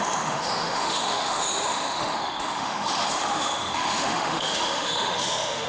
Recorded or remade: remade